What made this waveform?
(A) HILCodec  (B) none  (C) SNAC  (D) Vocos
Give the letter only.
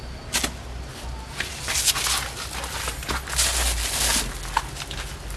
B